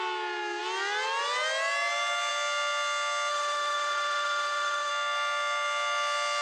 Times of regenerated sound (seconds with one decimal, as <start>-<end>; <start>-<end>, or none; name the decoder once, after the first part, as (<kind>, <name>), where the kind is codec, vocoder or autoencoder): 3.3-4.9 (autoencoder, DAC-VAE)